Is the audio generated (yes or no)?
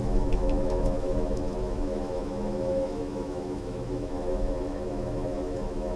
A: yes